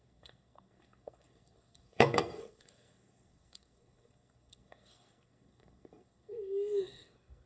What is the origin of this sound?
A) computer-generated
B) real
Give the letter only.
A